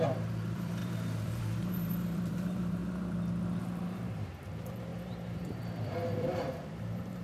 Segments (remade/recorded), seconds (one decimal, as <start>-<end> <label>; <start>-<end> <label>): 0.0-2.8 remade; 2.8-3.6 recorded; 3.6-7.2 remade